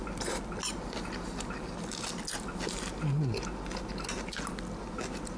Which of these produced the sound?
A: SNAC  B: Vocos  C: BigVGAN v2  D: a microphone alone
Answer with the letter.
D